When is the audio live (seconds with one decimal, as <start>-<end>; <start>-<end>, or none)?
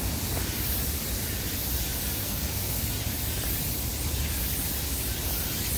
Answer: 0.0-2.2; 2.9-5.8